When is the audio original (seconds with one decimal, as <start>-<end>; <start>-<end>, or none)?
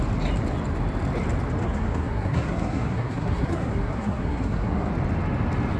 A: 0.0-1.6; 4.9-5.8